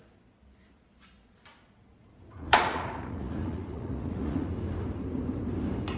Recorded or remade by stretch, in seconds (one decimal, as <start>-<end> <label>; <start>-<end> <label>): 0.0-2.0 recorded; 2.0-4.5 remade; 4.5-6.0 recorded